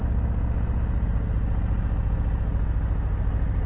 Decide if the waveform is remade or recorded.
recorded